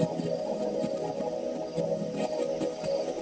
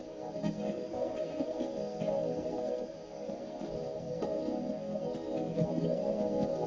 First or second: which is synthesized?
second